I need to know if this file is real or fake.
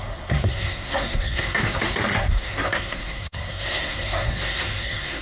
fake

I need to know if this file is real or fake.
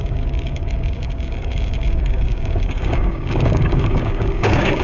fake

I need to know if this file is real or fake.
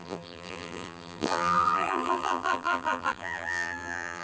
fake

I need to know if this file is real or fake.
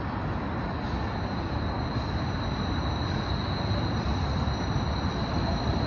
real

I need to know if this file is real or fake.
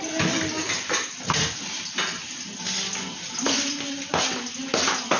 real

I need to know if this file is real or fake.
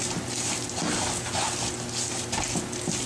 real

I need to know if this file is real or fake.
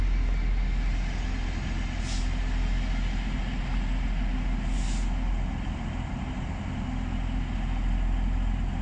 real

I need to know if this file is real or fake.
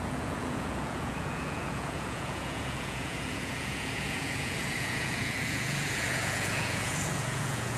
fake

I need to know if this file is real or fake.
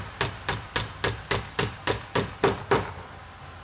real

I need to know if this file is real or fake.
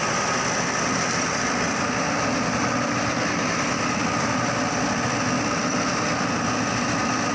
real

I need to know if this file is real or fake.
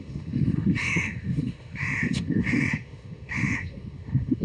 fake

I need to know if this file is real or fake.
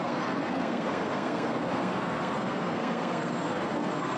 fake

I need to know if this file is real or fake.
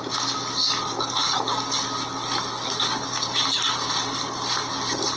real